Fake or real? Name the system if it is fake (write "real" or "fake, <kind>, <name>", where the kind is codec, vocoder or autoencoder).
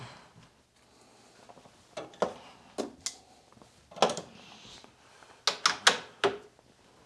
real